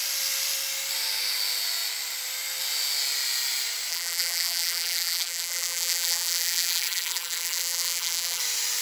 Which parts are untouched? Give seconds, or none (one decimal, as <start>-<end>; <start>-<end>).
0.0-3.9; 8.4-8.8